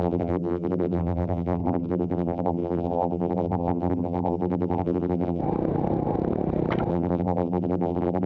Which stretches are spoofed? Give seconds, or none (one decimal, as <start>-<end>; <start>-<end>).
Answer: 0.0-5.4; 6.9-8.3